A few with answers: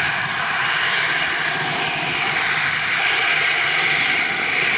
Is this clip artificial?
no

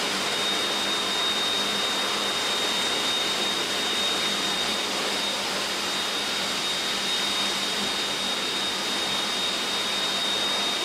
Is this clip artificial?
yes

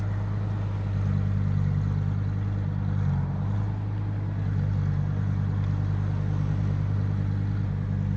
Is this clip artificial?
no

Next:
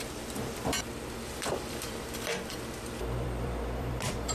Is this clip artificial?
yes